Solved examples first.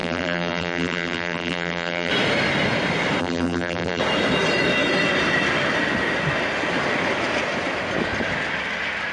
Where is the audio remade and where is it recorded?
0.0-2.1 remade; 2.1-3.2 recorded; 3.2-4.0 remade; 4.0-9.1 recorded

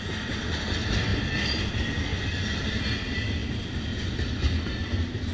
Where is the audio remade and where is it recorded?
0.0-5.3 recorded

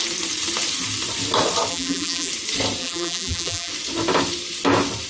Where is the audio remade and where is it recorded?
0.0-1.7 recorded; 1.7-2.3 remade; 2.3-2.8 recorded; 2.8-3.7 remade; 3.7-5.1 recorded

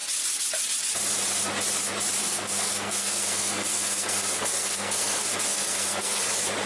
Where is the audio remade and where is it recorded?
0.0-2.2 recorded; 2.2-6.2 remade; 6.2-6.7 recorded

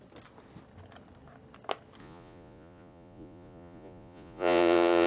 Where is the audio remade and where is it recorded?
0.0-2.0 recorded; 2.0-5.1 remade

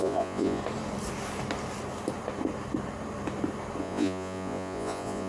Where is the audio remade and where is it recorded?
0.0-0.6 remade; 0.6-3.8 recorded; 3.8-5.3 remade

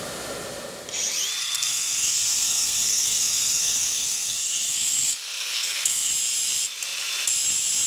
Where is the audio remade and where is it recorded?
0.0-1.4 recorded; 1.4-6.1 remade; 6.1-7.9 recorded